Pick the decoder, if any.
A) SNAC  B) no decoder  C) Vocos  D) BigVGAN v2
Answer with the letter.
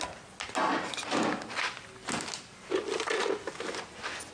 B